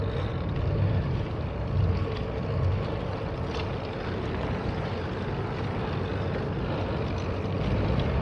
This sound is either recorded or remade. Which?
recorded